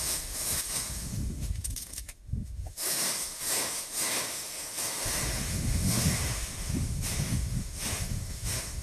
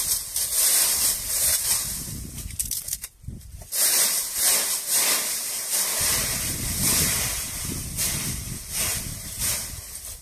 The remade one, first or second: first